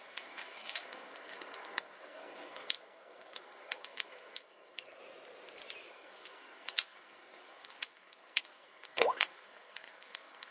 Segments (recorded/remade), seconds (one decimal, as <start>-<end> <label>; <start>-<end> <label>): 0.0-5.0 remade; 5.0-5.9 recorded; 5.9-10.5 remade